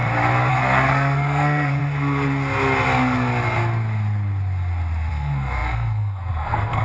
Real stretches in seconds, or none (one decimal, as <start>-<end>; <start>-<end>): 0.0-0.5; 1.8-5.1